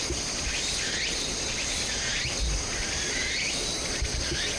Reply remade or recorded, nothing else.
recorded